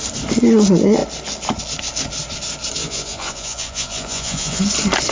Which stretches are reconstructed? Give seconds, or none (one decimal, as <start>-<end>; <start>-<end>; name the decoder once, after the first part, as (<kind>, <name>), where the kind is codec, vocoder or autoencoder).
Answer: 2.8-4.6 (vocoder, Vocos)